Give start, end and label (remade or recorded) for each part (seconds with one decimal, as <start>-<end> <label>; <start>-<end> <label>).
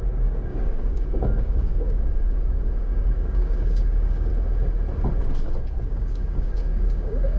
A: 0.0-4.3 remade; 4.3-5.8 recorded; 5.8-7.4 remade